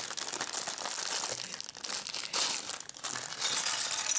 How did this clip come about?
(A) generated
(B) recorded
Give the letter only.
B